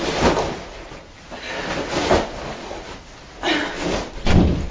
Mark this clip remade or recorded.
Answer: recorded